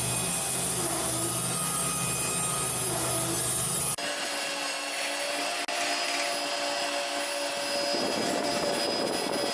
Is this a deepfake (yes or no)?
no